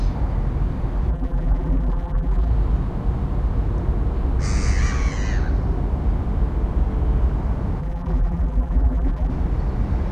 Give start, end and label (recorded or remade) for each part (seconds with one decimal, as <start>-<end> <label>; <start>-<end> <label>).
0.0-1.1 recorded; 1.1-2.5 remade; 2.5-7.8 recorded; 7.8-9.3 remade; 9.3-10.1 recorded

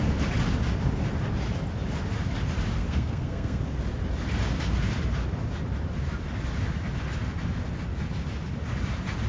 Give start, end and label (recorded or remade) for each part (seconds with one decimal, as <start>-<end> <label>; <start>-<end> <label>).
0.0-2.8 recorded; 2.8-3.6 remade; 3.6-9.3 recorded

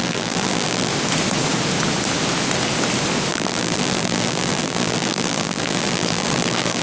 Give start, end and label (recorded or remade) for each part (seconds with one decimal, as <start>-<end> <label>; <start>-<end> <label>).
0.0-0.9 remade; 0.9-3.3 recorded; 3.3-6.8 remade

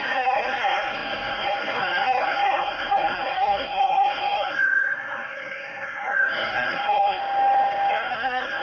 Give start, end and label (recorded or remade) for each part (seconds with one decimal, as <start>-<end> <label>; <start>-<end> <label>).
0.0-7.2 remade; 7.2-7.9 recorded; 7.9-8.6 remade

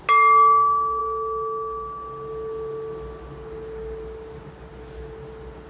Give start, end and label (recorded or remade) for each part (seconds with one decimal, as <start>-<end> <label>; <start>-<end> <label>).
0.0-5.7 recorded